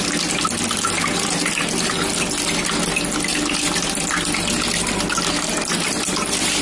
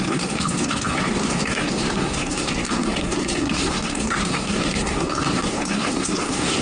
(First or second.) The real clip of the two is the first